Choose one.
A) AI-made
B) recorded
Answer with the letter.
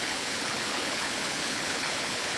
A